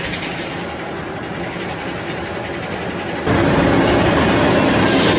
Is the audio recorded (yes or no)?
yes